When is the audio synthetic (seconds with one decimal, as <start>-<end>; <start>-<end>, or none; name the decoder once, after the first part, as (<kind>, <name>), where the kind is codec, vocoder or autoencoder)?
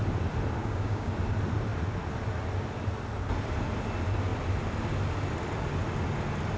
0.6-1.1 (codec, DAC)